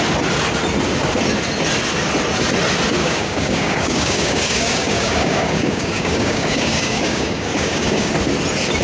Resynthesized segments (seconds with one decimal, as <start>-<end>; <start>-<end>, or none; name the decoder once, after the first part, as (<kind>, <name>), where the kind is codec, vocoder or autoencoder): 3.0-8.1 (codec, DAC)